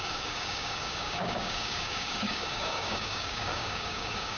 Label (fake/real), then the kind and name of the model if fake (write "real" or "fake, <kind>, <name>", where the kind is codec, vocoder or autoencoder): fake, codec, DAC